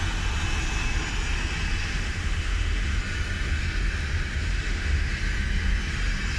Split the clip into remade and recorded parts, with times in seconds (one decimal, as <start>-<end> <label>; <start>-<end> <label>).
0.0-1.8 recorded; 1.8-3.0 remade; 3.0-4.5 recorded; 4.5-5.1 remade; 5.1-6.4 recorded